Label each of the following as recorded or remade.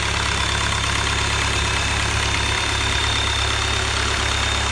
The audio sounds recorded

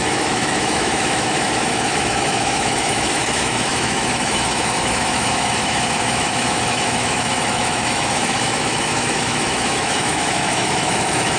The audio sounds remade